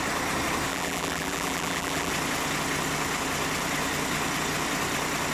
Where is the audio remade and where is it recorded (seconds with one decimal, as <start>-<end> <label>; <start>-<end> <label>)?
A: 0.0-0.7 recorded; 0.7-2.1 remade; 2.1-5.3 recorded